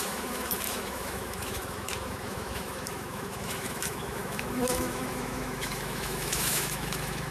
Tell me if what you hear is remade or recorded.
remade